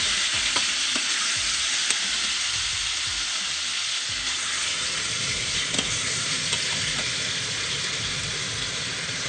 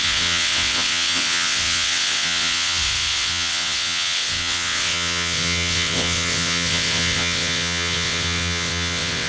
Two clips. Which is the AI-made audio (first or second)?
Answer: second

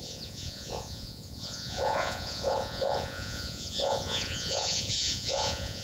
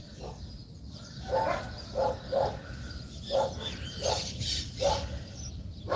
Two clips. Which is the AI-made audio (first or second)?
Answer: first